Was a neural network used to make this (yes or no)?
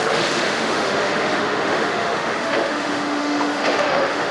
yes